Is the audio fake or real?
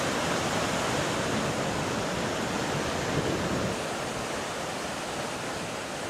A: real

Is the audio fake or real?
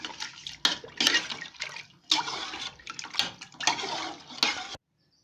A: real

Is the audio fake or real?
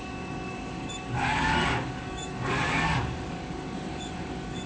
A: fake